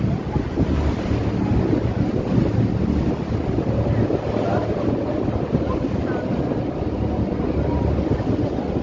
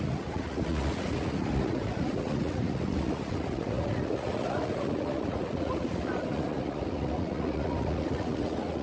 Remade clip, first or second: second